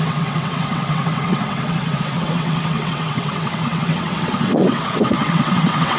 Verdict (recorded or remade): remade